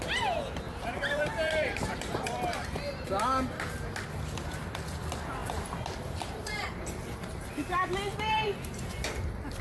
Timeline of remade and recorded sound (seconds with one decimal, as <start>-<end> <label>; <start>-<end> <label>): 0.0-3.3 remade; 3.3-4.1 recorded; 4.1-9.6 remade